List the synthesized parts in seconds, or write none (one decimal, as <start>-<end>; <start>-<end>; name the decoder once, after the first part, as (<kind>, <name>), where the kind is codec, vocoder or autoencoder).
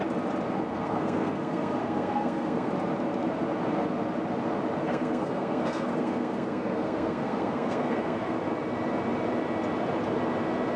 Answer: 0.7-2.7 (codec, SNAC); 4.8-8.4